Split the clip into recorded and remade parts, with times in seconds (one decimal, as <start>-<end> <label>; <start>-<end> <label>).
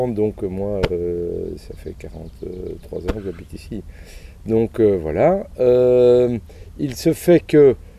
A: 0.0-6.6 recorded; 6.6-7.4 remade; 7.4-8.0 recorded